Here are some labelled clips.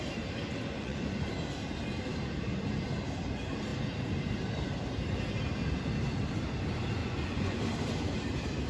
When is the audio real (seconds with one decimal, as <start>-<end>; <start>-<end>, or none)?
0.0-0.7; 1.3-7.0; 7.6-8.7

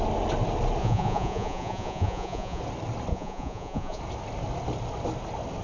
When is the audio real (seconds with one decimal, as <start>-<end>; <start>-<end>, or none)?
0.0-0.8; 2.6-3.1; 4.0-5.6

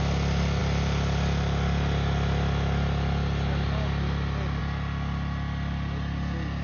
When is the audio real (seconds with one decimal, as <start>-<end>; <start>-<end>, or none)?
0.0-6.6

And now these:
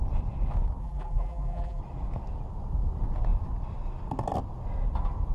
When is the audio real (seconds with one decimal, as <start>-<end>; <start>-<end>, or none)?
0.0-0.8; 1.8-5.3

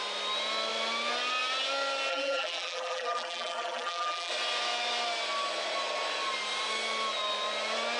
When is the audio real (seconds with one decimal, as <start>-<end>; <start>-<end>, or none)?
0.0-2.1; 4.3-8.0